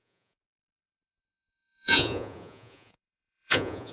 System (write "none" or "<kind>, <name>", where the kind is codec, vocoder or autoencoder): vocoder, Vocos